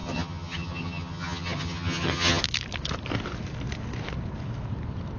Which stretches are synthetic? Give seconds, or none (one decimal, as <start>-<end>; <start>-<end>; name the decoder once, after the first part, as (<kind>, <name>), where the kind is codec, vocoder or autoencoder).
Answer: 0.0-2.4 (vocoder, HiFi-GAN)